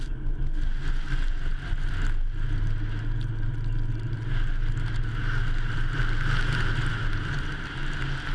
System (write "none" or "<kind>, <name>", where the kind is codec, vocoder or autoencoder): none